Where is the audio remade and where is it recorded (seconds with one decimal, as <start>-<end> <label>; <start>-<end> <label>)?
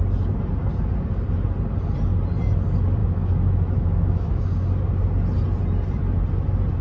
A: 0.0-3.0 recorded; 3.0-4.4 remade; 4.4-6.8 recorded